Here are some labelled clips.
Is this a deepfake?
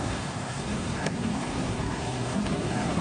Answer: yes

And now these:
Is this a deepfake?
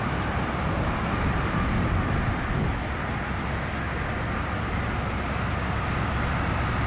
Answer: no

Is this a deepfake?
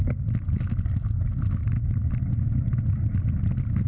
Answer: no